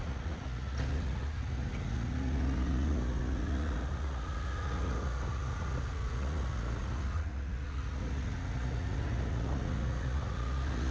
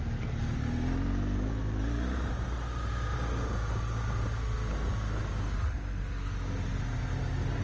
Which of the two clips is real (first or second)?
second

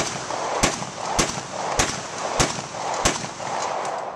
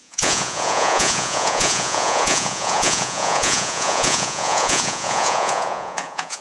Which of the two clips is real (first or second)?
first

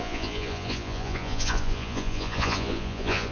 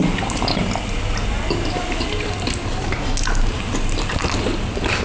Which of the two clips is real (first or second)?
second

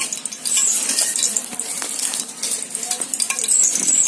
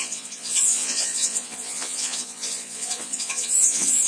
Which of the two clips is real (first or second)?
first